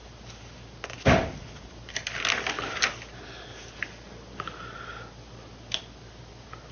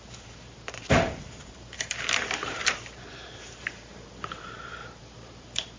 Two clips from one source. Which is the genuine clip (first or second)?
first